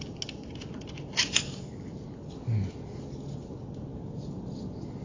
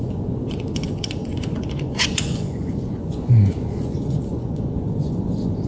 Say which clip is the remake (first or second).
second